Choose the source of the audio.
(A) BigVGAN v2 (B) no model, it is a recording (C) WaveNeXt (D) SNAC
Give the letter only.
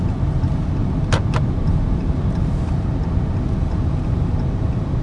B